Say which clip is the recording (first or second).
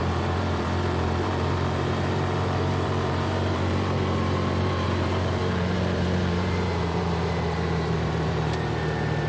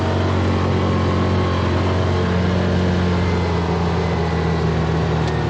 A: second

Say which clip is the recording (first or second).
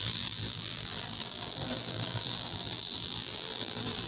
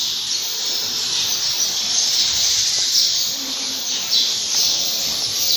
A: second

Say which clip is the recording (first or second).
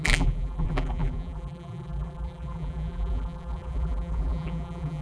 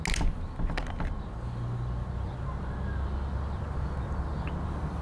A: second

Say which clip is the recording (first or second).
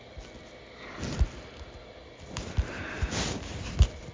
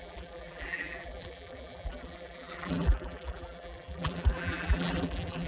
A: first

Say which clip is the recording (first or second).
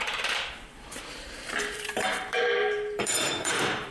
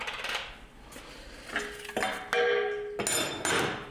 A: second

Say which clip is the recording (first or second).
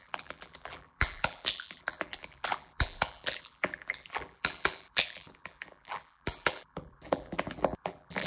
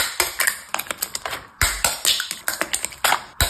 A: second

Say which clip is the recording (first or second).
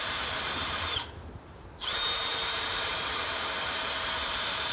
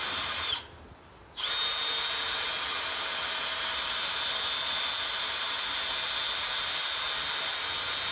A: second